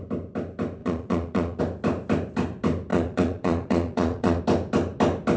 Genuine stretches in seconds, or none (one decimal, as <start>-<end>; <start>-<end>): 0.0-0.8; 1.6-2.9; 4.4-5.4

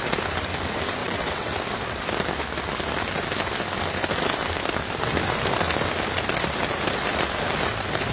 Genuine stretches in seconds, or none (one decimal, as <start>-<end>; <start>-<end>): 0.0-1.0; 1.6-8.1

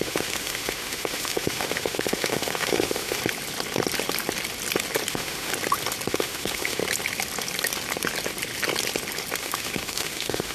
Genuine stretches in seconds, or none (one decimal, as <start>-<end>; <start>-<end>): 3.2-5.1; 5.5-6.1; 6.8-9.4